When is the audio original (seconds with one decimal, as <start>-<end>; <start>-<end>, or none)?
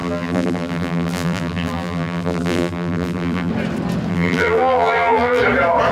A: 3.5-4.1; 5.4-5.9